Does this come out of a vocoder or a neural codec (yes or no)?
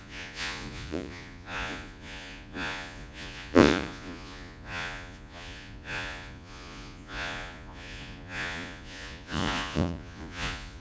yes